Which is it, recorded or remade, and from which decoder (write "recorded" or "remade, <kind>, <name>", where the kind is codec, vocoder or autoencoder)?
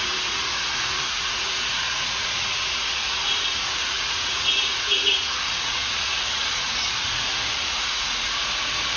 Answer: remade, vocoder, Vocos